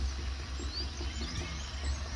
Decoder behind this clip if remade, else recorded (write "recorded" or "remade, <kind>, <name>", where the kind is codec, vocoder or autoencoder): recorded